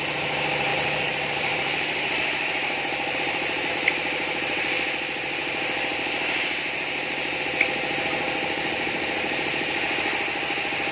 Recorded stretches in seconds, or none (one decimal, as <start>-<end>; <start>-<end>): 0.0-0.7; 3.7-10.9